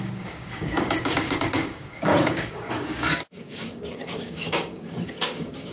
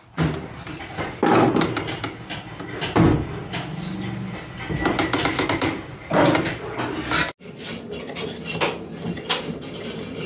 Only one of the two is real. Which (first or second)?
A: second